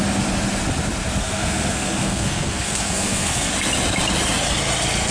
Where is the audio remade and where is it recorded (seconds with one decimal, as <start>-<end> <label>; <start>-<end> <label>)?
0.0-1.2 recorded; 1.2-3.5 remade; 3.5-5.1 recorded